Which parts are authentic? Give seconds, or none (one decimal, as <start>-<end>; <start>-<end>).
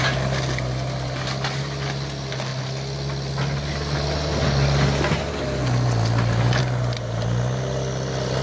0.0-8.4